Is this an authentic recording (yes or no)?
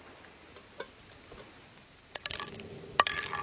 yes